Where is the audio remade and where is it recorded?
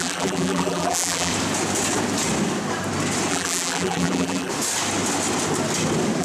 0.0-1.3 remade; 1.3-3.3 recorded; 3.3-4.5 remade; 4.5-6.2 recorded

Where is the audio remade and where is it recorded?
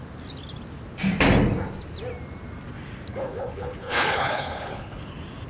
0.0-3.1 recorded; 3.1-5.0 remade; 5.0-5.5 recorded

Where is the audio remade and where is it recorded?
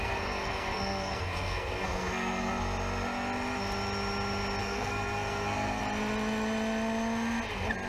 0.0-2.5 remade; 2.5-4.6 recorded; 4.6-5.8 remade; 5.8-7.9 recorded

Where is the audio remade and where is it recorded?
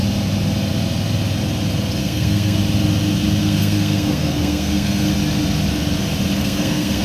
0.0-2.0 recorded; 2.0-2.6 remade; 2.6-3.4 recorded; 3.4-5.1 remade; 5.1-6.4 recorded; 6.4-7.0 remade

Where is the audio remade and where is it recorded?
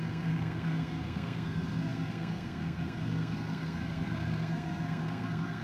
0.0-5.6 remade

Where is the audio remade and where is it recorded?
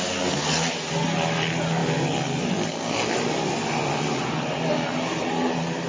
0.0-5.9 recorded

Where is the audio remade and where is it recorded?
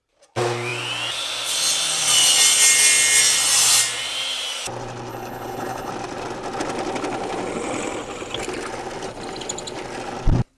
0.0-5.1 recorded; 5.1-5.9 remade; 5.9-10.6 recorded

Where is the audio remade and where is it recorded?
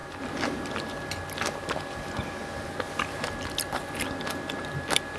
0.0-1.9 remade; 1.9-5.2 recorded